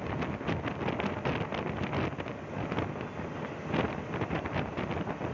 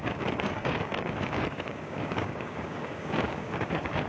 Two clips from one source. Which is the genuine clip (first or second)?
first